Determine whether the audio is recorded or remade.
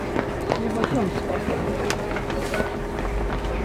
recorded